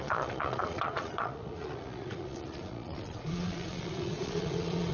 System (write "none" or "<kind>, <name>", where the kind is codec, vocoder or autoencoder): vocoder, Vocos